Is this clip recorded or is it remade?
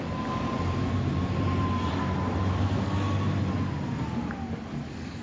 recorded